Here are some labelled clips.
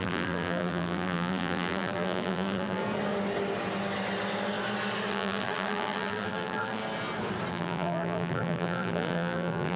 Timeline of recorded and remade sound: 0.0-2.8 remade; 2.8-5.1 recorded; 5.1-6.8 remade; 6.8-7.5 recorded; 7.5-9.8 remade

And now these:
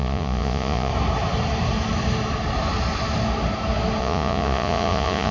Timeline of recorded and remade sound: 0.0-0.9 remade; 0.9-4.0 recorded; 4.0-5.3 remade

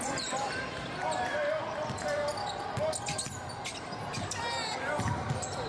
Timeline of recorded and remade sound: 0.0-5.7 recorded

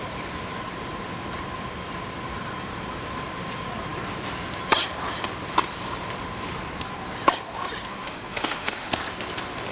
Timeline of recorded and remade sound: 0.0-7.9 recorded; 7.9-8.9 remade; 8.9-9.7 recorded

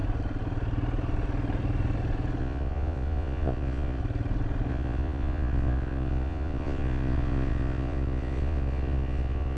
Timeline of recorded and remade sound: 0.0-2.4 recorded; 2.4-4.0 remade; 4.0-4.7 recorded; 4.7-9.6 remade

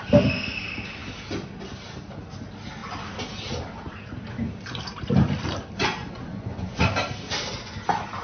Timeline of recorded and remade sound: 0.0-6.0 recorded; 6.0-6.8 remade; 6.8-8.2 recorded

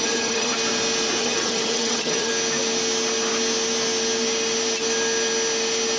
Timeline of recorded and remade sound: 0.0-0.5 remade; 0.5-1.2 recorded; 1.2-2.3 remade; 2.3-6.0 recorded

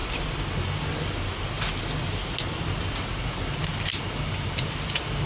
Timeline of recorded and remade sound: 0.0-5.3 recorded